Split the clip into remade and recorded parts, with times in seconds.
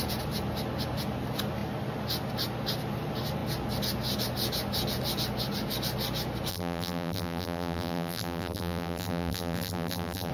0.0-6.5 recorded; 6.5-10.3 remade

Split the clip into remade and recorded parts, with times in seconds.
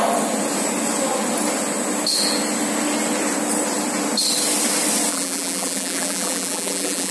0.0-5.1 recorded; 5.1-7.1 remade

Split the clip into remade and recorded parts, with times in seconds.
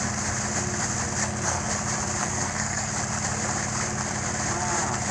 0.0-1.2 recorded; 1.2-1.7 remade; 1.7-2.2 recorded; 2.2-2.9 remade; 2.9-5.1 recorded